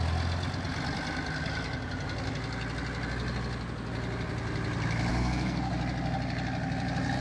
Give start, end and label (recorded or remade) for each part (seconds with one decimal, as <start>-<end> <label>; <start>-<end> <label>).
0.0-5.1 recorded; 5.1-5.7 remade; 5.7-7.2 recorded

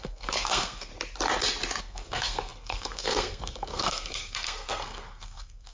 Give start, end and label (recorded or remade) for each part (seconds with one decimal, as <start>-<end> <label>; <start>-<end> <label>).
0.0-0.9 remade; 0.9-1.8 recorded; 1.8-5.7 remade

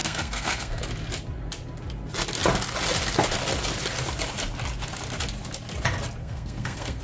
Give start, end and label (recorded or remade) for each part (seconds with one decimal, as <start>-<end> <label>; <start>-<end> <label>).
0.0-0.8 remade; 0.8-6.2 recorded; 6.2-7.0 remade